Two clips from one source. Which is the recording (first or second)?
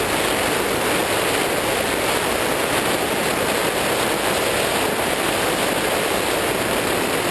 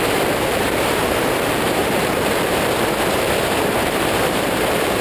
first